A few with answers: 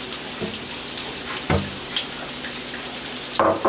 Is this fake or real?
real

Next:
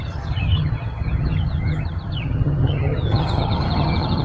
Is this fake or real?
fake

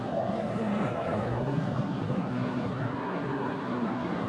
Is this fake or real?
fake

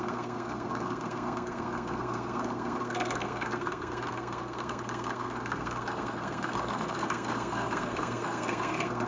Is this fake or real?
fake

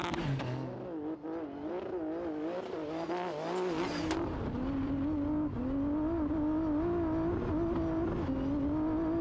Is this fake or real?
real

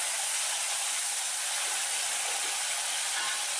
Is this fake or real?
real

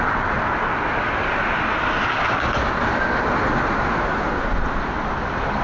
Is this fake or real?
real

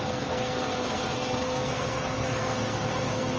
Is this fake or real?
fake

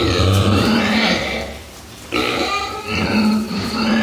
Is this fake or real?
fake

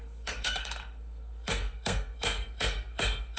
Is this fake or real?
fake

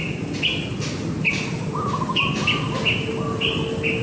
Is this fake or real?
real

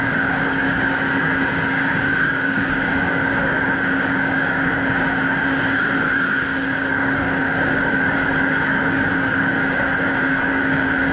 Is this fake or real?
fake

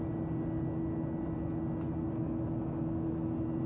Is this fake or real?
real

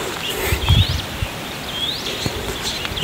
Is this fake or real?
fake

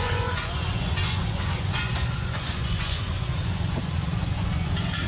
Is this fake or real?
fake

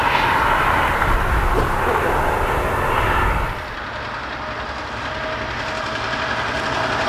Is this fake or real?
real